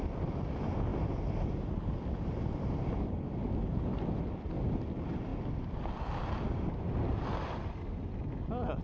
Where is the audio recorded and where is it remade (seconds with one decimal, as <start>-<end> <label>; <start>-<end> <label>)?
0.0-8.8 recorded